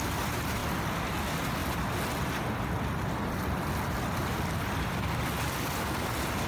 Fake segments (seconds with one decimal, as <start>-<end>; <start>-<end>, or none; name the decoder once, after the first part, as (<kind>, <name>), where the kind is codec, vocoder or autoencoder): none

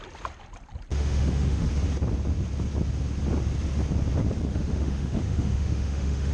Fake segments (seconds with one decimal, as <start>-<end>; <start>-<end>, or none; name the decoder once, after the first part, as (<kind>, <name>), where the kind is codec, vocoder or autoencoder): 0.9-1.7 (autoencoder, DAC-VAE); 4.5-6.3